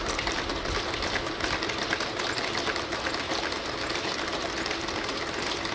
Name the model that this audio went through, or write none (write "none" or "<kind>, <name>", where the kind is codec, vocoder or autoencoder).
none